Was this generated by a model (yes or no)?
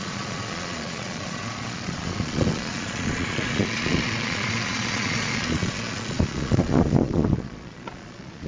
yes